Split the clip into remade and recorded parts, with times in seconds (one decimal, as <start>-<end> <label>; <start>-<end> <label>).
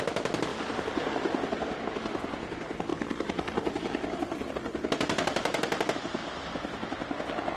0.0-0.5 recorded; 0.5-1.8 remade; 1.8-2.9 recorded; 2.9-4.5 remade; 4.5-7.6 recorded